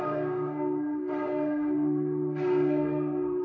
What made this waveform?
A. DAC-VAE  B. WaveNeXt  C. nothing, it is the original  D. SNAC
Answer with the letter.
A